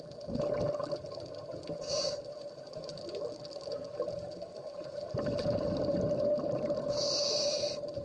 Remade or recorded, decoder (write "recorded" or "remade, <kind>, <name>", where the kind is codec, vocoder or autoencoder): recorded